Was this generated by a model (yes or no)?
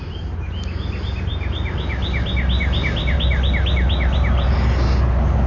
no